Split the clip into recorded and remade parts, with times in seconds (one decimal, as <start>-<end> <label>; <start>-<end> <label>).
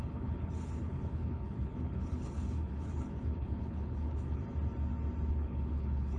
0.0-4.4 remade; 4.4-5.3 recorded; 5.3-6.2 remade